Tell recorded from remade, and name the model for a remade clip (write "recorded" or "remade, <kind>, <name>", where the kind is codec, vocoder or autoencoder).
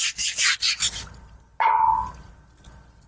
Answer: recorded